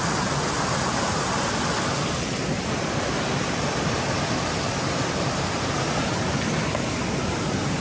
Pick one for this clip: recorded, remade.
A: recorded